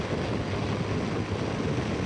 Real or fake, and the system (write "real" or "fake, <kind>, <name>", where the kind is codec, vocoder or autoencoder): real